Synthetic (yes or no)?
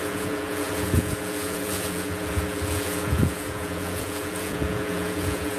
yes